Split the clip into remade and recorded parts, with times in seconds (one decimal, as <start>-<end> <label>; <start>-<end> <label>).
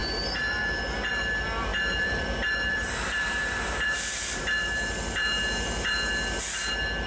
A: 0.0-1.7 recorded; 1.7-4.4 remade; 4.4-7.1 recorded